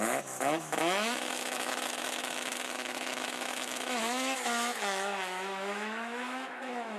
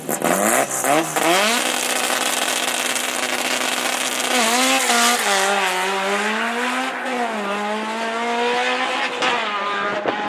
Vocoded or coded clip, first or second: first